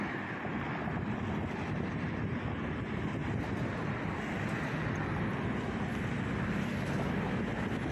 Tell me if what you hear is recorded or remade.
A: recorded